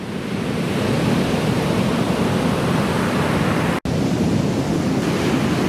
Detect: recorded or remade recorded